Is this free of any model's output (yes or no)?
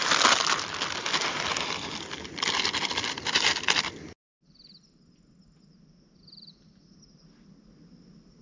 yes